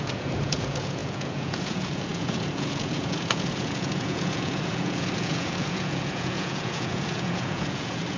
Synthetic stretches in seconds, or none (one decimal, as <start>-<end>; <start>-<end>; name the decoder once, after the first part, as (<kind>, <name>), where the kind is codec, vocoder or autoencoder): 0.0-8.2 (vocoder, Vocos)